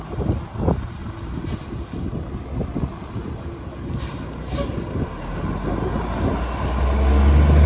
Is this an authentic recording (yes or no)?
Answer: yes